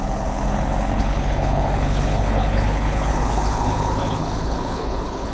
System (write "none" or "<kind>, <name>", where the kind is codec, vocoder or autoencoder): codec, HILCodec